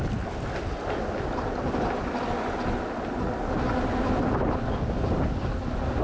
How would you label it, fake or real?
real